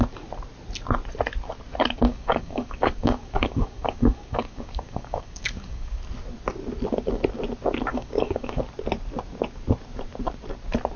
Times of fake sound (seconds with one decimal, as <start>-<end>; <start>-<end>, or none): 2.1-6.0; 7.9-8.6